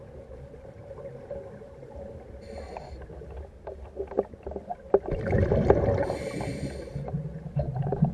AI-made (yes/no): no